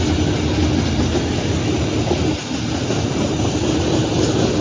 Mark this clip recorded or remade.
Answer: recorded